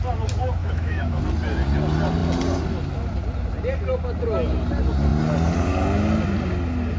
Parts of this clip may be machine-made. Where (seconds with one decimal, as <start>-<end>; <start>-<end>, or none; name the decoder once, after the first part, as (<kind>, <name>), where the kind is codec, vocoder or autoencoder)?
0.6-1.2 (autoencoder, DAC-VAE)